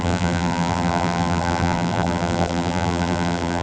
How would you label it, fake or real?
fake